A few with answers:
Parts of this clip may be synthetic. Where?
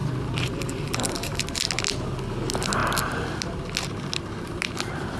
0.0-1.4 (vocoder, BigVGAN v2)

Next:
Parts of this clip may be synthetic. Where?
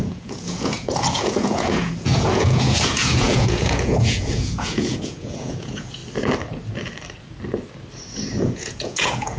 0.0-6.0 (vocoder, Vocos); 8.4-9.4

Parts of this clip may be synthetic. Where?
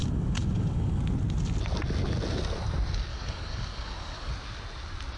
0.0-1.0 (codec, DAC); 3.1-4.3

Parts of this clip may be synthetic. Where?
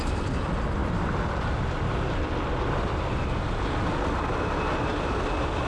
none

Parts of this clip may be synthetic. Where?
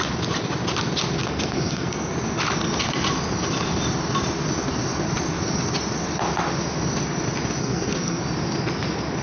1.2-2.1 (codec, SNAC); 7.6-8.2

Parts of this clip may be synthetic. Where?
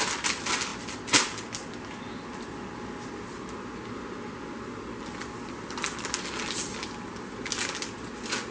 none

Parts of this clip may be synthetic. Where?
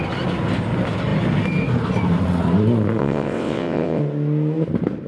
3.0-4.0 (vocoder, WaveNeXt)